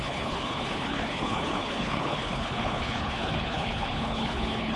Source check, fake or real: fake